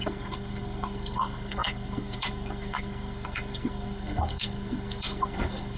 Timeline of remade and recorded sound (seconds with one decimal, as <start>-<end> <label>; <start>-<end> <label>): 0.0-5.8 remade